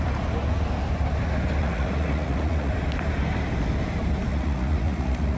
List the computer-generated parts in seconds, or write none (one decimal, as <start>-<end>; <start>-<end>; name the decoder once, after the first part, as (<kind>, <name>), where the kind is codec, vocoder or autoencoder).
1.6-2.7 (vocoder, Vocos); 4.3-5.4